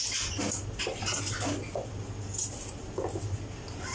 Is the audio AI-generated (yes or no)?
no